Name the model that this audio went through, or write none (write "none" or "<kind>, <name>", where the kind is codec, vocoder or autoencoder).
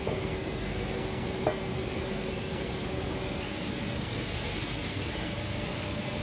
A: codec, SNAC